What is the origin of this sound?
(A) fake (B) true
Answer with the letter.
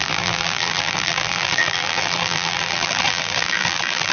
A